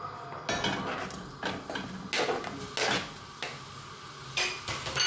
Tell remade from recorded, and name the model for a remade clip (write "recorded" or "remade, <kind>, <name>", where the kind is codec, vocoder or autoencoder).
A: recorded